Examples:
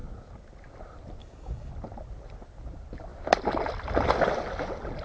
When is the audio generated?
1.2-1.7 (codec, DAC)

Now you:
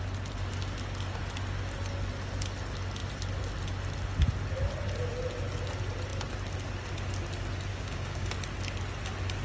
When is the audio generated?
7.7-8.3 (codec, DAC)

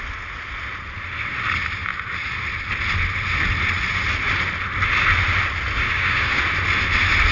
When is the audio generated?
5.9-6.4 (codec, DAC)

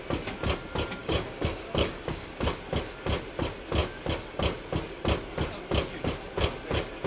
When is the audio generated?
1.0-2.6 (codec, DAC)

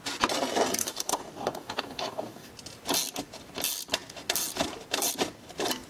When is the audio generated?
0.8-2.5 (codec, DAC)

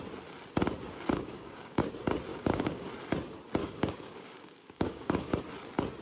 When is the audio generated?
1.1-1.9 (codec, DAC); 2.3-2.9; 3.6-5.4

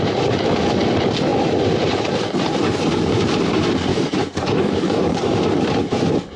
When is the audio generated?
2.6-3.1 (codec, DAC); 3.9-5.4